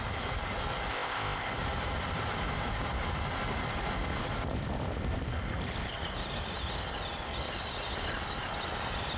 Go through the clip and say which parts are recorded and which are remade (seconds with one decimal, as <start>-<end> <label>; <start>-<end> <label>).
0.0-0.9 recorded; 0.9-1.5 remade; 1.5-9.2 recorded